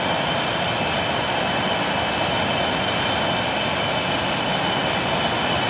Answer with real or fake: real